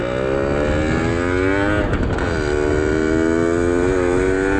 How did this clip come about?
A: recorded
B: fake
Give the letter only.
A